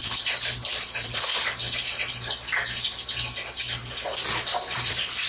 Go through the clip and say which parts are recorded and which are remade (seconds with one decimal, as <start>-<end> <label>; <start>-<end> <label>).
0.0-1.3 remade; 1.3-4.4 recorded; 4.4-5.3 remade